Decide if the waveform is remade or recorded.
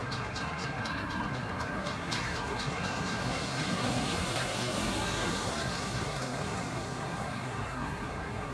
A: remade